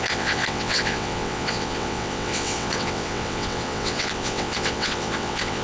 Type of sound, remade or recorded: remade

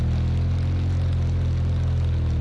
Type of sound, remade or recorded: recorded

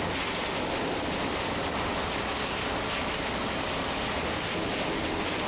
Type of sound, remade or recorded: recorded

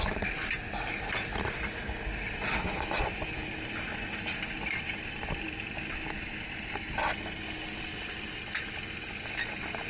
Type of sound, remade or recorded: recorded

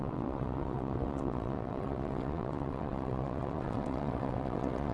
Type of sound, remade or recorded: remade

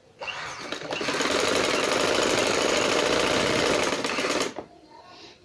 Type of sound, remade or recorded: recorded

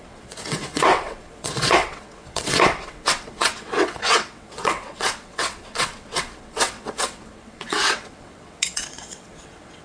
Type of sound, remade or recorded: remade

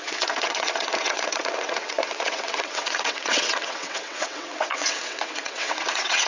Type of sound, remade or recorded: remade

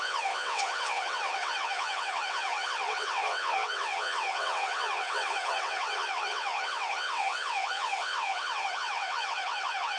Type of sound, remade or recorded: remade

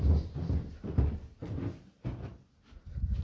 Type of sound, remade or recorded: recorded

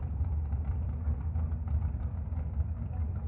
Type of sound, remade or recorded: recorded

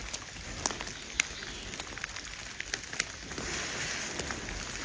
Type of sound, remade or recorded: recorded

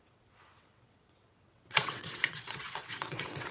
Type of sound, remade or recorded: remade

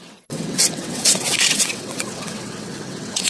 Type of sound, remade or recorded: remade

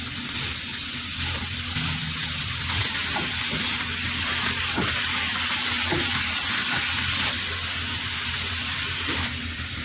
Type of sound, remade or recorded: recorded